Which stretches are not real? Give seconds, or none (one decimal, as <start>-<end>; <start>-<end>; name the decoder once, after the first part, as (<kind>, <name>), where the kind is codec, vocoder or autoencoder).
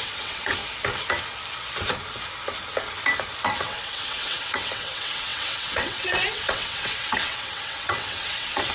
0.0-0.6 (vocoder, WaveNeXt); 3.4-8.7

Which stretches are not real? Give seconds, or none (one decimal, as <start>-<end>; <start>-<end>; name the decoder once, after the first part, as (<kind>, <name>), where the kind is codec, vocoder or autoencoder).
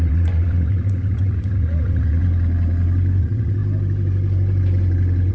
0.0-2.2 (vocoder, WaveNeXt); 3.2-3.6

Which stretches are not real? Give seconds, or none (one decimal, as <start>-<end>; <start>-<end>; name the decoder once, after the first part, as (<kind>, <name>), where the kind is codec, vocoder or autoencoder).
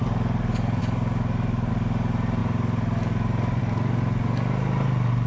none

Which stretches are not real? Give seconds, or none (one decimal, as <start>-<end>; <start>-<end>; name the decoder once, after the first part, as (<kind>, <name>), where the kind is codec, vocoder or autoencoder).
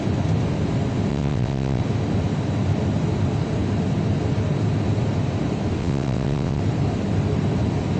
1.1-1.8 (vocoder, WaveNeXt); 5.8-6.6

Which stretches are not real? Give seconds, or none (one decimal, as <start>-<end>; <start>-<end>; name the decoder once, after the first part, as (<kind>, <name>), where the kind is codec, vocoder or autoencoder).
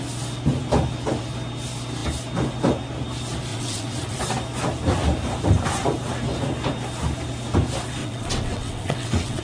3.5-4.2 (vocoder, WaveNeXt); 8.0-9.4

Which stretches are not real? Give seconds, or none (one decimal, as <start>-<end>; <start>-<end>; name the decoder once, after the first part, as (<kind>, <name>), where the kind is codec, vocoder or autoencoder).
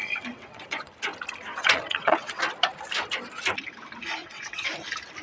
0.0-0.9 (vocoder, WaveNeXt); 1.5-2.4; 4.2-4.7